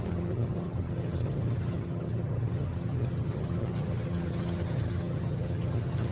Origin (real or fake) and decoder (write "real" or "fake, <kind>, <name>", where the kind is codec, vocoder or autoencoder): fake, vocoder, HiFi-GAN